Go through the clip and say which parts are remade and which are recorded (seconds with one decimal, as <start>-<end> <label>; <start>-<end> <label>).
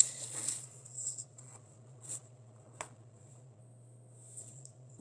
0.0-3.6 remade; 3.6-4.4 recorded; 4.4-5.0 remade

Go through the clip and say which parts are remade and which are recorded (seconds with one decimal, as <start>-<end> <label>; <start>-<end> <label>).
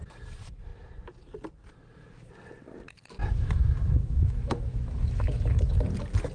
0.0-3.2 recorded; 3.2-5.7 remade; 5.7-6.3 recorded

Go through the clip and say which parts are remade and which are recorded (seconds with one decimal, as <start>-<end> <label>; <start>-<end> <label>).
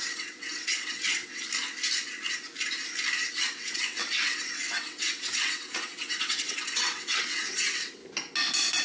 0.0-1.4 remade; 1.4-3.3 recorded; 3.3-8.0 remade; 8.0-8.8 recorded